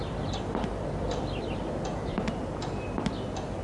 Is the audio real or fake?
real